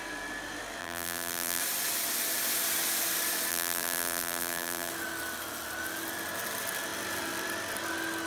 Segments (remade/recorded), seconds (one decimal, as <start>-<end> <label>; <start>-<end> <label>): 0.0-0.8 recorded; 0.8-1.6 remade; 1.6-3.5 recorded; 3.5-4.9 remade; 4.9-8.3 recorded